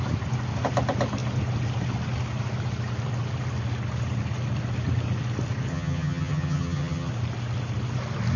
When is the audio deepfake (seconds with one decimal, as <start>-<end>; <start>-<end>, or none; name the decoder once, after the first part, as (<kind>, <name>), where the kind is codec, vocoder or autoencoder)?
5.7-7.1 (vocoder, HiFi-GAN)

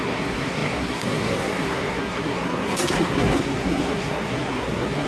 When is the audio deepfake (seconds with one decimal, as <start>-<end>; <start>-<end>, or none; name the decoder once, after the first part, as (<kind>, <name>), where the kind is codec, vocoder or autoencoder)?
0.0-5.1 (codec, SNAC)

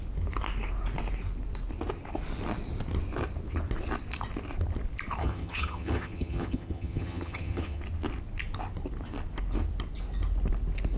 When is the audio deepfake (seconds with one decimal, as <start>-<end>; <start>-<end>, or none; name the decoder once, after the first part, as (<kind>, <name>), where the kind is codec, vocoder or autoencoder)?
5.2-7.8 (vocoder, HiFi-GAN)

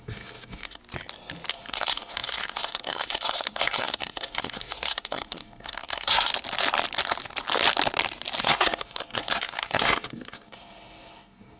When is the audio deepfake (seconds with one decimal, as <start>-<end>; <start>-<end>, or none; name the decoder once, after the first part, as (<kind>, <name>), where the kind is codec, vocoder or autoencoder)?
0.0-0.8 (codec, SNAC); 1.5-6.3; 8.4-11.6

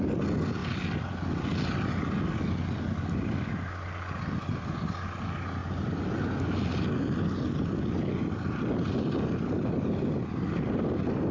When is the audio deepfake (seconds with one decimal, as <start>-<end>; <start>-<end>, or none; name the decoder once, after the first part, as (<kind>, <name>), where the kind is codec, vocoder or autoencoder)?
none

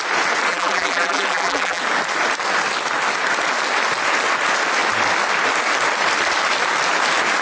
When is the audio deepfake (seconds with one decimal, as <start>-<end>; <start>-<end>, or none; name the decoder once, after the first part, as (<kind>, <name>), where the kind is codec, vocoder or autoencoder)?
0.5-1.8 (vocoder, BigVGAN v2)

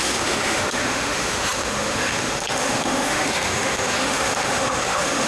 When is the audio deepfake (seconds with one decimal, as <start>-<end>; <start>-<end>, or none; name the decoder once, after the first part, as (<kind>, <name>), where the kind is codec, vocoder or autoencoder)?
0.0-5.3 (autoencoder, DAC-VAE)

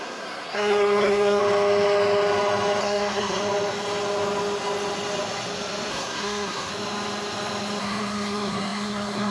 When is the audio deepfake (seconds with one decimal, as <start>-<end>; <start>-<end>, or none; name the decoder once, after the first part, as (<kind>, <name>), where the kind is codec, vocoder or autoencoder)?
0.0-1.4 (codec, SNAC); 2.8-3.4; 5.9-6.7; 7.8-9.3